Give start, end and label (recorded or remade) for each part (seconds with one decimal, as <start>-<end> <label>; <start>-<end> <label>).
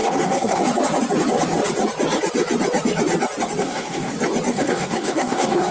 0.0-0.6 remade; 0.6-3.6 recorded; 3.6-4.1 remade; 4.1-4.5 recorded; 4.5-5.7 remade